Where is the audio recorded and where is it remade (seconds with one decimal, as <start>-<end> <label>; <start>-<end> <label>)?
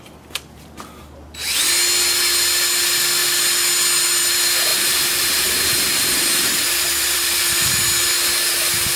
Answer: 0.0-4.7 recorded; 4.7-7.4 remade; 7.4-9.0 recorded